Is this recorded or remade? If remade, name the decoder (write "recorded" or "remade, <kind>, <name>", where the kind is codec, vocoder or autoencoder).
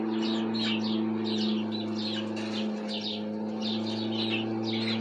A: recorded